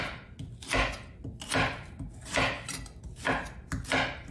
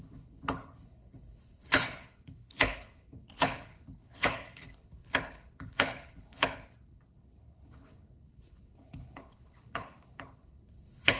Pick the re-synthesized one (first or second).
second